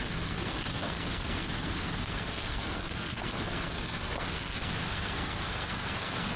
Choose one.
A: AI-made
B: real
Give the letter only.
A